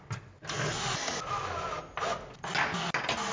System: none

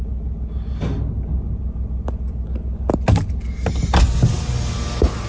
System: none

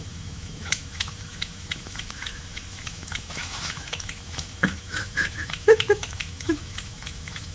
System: autoencoder, DAC-VAE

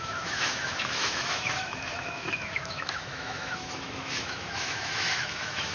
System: autoencoder, DAC-VAE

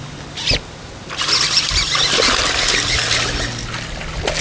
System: none